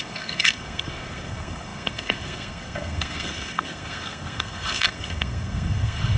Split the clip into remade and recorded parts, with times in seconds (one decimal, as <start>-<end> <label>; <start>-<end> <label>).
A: 0.0-6.2 remade

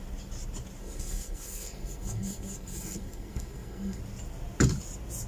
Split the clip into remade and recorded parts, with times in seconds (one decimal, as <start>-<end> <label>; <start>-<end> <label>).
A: 0.0-0.8 recorded; 0.8-4.0 remade; 4.0-5.3 recorded

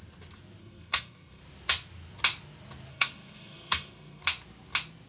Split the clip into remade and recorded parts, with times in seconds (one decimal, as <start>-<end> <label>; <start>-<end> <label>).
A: 0.0-0.6 recorded; 0.6-1.4 remade; 1.4-2.9 recorded; 2.9-4.2 remade; 4.2-5.1 recorded